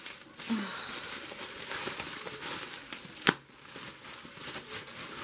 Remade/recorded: recorded